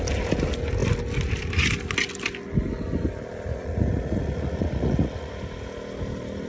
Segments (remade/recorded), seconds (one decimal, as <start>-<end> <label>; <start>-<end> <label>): 0.0-3.5 recorded; 3.5-5.3 remade; 5.3-6.5 recorded